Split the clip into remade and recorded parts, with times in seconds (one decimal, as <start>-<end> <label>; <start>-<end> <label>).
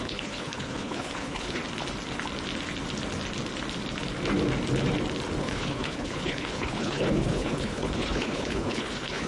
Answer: 0.0-1.6 remade; 1.6-5.4 recorded; 5.4-9.3 remade